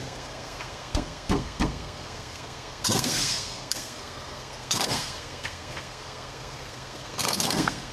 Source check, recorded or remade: remade